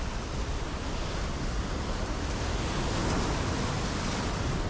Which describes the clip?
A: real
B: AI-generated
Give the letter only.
A